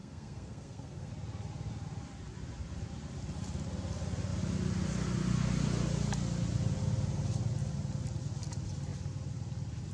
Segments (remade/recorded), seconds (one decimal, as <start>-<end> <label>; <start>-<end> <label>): 0.0-1.1 remade; 1.1-9.9 recorded